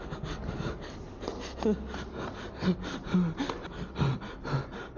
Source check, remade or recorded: recorded